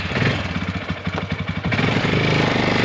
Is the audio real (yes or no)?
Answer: yes